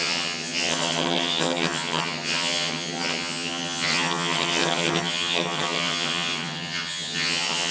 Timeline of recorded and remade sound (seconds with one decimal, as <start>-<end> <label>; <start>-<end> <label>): 0.0-7.7 remade